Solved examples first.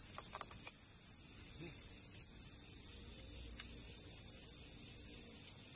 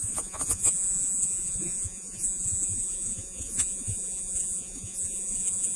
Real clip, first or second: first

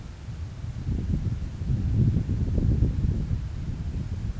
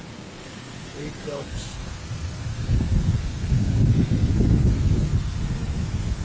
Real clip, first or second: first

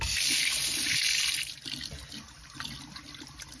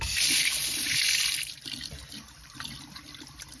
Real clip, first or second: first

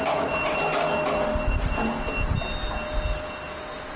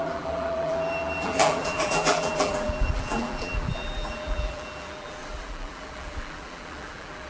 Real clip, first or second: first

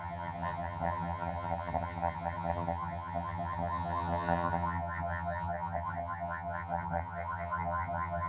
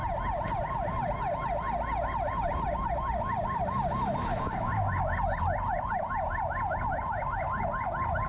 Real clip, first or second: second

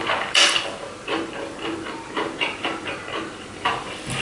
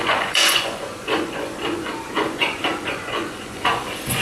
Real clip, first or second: first